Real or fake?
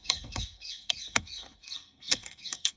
fake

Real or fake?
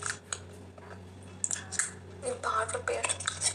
real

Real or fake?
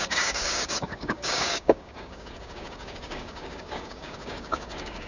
fake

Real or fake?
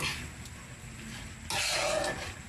real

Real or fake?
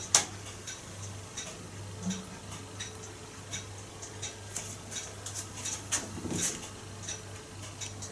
real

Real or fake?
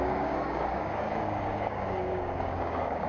fake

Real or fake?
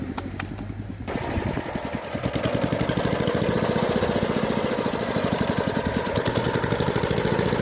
real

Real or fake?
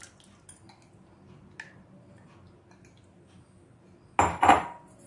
real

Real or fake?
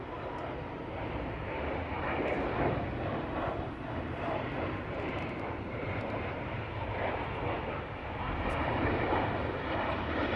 fake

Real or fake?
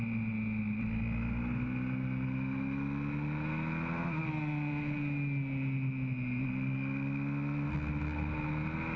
real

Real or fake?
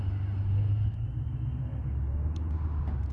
real